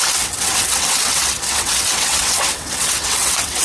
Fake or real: fake